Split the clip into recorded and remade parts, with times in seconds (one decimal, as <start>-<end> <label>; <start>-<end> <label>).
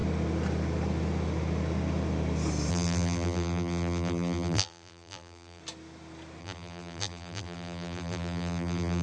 0.0-2.7 recorded; 2.7-5.6 remade; 5.6-6.4 recorded; 6.4-9.0 remade